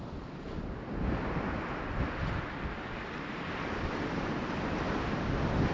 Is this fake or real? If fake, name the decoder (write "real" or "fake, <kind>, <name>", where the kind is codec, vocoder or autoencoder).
real